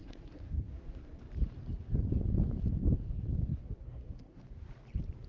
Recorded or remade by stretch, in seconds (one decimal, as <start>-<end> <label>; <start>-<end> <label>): 0.0-1.2 remade; 1.2-3.5 recorded; 3.5-4.4 remade; 4.4-5.3 recorded